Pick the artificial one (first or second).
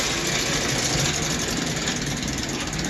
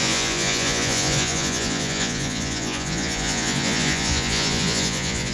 second